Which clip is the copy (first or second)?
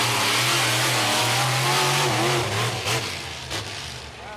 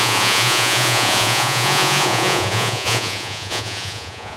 second